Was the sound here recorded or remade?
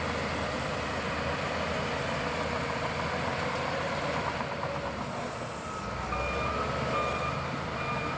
recorded